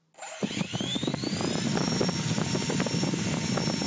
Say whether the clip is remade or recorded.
recorded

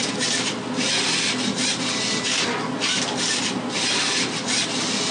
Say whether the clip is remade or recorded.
recorded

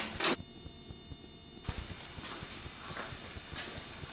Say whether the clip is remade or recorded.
recorded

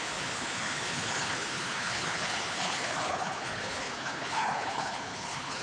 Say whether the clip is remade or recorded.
remade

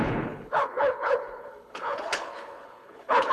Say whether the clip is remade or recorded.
remade